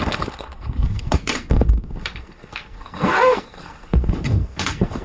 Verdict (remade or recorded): remade